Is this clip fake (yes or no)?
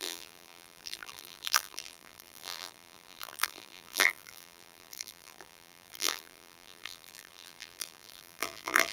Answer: yes